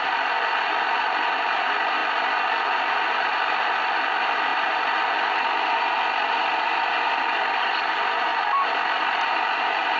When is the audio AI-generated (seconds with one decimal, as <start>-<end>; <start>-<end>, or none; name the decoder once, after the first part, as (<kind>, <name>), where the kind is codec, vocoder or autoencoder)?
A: none